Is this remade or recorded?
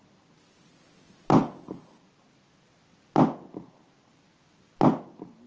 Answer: recorded